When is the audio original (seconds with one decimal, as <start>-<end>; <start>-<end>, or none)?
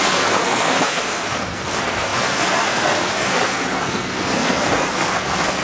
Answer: none